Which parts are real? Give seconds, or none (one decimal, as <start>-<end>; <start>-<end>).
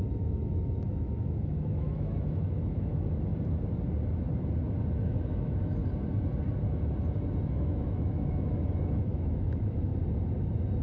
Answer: 3.3-5.0; 5.8-7.5; 9.9-10.8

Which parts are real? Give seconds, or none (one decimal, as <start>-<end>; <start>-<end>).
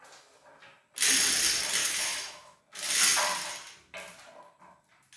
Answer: 0.0-1.8; 2.6-5.2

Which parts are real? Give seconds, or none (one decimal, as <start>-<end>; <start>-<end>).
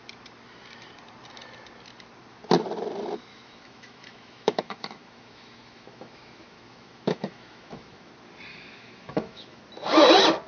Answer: 0.0-3.3; 8.1-8.5; 9.6-10.5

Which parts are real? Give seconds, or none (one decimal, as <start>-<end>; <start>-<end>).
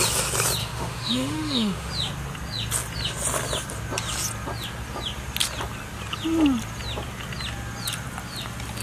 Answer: 0.0-0.6; 1.9-8.8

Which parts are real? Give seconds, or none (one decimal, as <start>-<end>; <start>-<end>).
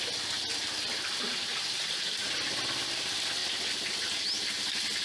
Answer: 0.0-5.0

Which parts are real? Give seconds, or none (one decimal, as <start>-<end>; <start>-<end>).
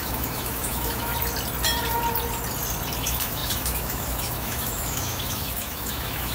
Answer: 1.1-3.0